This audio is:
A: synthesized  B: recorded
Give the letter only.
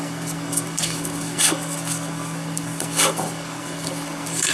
A